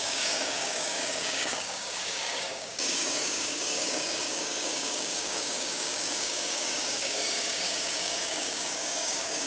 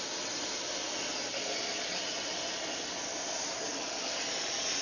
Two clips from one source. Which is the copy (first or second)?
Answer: first